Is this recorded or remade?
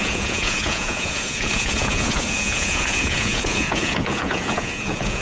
remade